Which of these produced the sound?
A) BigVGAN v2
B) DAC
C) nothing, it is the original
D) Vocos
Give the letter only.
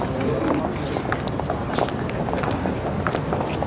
C